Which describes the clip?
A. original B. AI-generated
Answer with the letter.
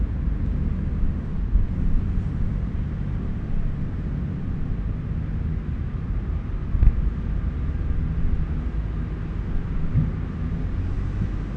A